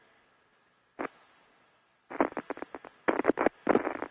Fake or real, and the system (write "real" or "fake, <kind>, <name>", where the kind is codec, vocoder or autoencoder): real